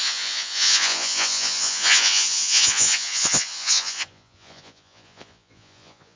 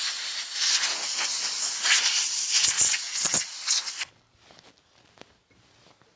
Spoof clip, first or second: first